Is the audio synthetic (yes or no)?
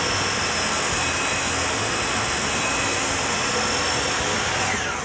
no